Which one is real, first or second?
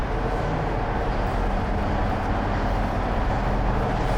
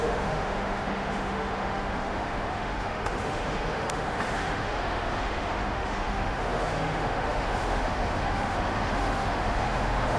first